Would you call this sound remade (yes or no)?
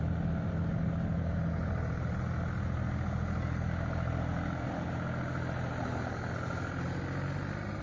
no